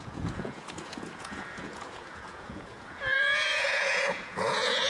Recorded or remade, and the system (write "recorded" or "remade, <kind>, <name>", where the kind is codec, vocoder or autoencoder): remade, vocoder, Vocos